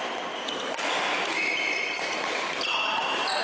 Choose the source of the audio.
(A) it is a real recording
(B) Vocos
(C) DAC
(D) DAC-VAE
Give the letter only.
A